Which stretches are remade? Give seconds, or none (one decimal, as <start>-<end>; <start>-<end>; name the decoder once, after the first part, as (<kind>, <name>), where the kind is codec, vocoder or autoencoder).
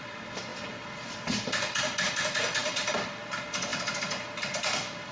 2.6-3.2 (vocoder, BigVGAN v2)